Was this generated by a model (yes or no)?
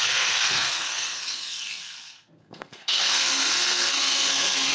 yes